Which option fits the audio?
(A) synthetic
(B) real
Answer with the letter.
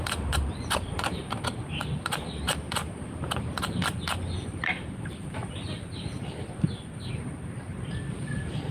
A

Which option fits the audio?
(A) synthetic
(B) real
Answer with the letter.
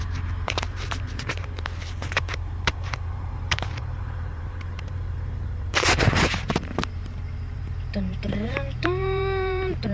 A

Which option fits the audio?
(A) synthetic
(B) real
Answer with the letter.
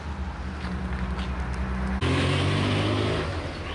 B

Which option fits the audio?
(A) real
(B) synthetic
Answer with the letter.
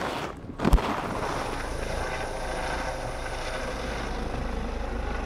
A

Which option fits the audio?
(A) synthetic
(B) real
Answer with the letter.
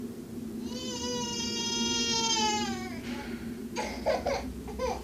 B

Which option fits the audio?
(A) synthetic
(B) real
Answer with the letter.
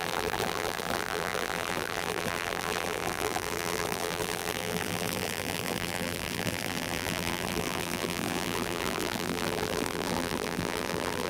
A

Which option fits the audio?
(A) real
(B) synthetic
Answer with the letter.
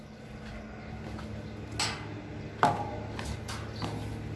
A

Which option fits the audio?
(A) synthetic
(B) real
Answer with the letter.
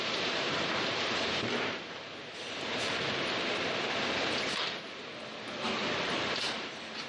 A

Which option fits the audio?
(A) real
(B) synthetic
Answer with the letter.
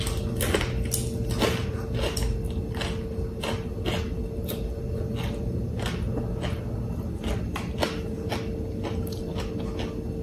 A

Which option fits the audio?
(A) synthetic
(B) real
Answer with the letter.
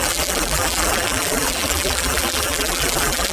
A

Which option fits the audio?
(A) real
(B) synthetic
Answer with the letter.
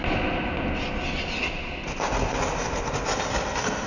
A